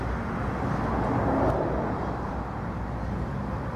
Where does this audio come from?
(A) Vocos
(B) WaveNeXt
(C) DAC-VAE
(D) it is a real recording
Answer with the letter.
D